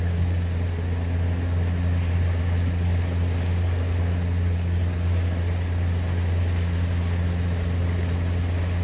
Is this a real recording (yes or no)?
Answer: yes